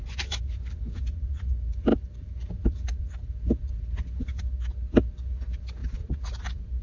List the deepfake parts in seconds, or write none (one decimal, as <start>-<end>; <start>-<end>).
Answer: 0.0-4.3; 5.1-6.8